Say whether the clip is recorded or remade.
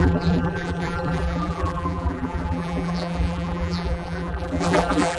remade